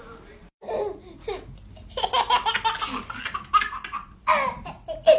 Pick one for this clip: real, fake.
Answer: real